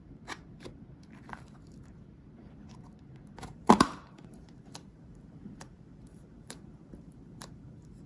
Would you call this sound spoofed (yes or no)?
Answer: yes